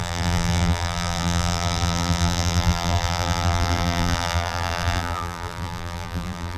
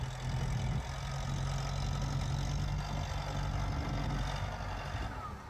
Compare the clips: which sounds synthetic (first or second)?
first